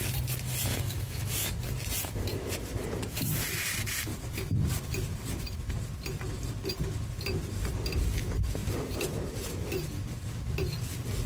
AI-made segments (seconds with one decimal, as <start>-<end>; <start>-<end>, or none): 0.7-1.5